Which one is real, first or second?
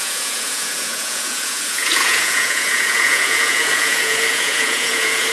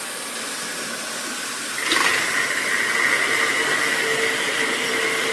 second